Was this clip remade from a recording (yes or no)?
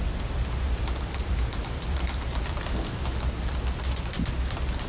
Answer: yes